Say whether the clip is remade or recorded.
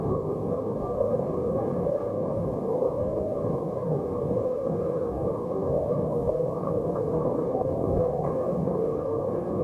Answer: remade